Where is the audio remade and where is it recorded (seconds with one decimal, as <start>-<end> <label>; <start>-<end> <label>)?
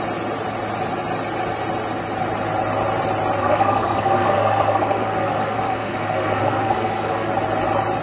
0.0-3.4 recorded; 3.4-7.3 remade; 7.3-8.0 recorded